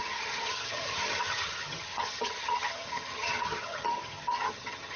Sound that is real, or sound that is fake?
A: fake